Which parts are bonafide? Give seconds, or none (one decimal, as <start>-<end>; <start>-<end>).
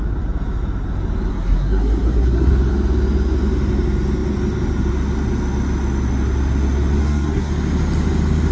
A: 0.0-1.3; 2.5-7.0; 7.5-8.5